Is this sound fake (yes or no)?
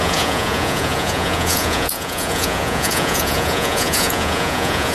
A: yes